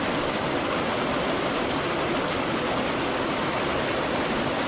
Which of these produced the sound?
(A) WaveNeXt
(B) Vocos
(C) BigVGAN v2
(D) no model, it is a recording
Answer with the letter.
D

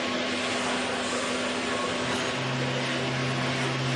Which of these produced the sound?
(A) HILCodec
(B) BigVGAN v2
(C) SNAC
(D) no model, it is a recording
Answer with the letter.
D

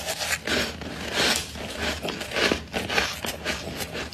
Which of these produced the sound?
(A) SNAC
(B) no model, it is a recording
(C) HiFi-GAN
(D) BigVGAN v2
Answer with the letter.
B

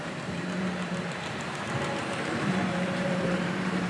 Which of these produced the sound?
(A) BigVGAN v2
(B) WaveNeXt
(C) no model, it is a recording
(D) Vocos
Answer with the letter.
A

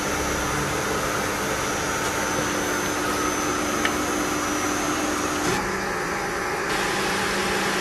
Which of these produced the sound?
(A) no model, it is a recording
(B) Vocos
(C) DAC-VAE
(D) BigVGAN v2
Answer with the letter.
A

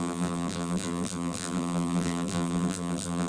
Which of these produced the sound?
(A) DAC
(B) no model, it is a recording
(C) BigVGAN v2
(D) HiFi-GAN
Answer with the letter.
C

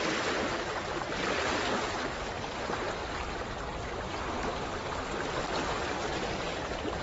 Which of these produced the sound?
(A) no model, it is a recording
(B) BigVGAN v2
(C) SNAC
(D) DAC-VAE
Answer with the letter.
A